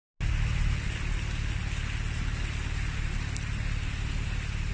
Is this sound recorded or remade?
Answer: recorded